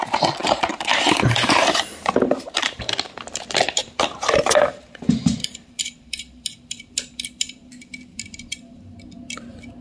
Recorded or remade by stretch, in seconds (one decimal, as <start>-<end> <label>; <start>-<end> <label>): 0.0-0.4 recorded; 0.4-3.2 remade; 3.2-3.8 recorded; 3.8-6.6 remade; 6.6-9.8 recorded